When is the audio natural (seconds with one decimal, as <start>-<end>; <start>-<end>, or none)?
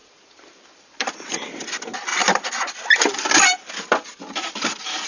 1.7-2.1; 4.5-5.1